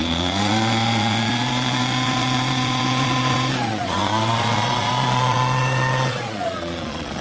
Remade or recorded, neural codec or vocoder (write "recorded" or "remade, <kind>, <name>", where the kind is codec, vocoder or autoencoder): remade, vocoder, Vocos